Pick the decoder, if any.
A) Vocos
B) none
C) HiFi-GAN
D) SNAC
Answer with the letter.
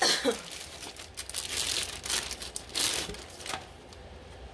B